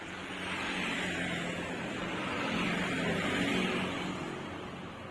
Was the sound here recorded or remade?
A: recorded